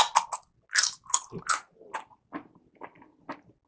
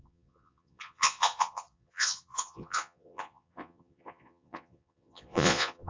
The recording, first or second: first